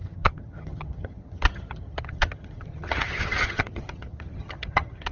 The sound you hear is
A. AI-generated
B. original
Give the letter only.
A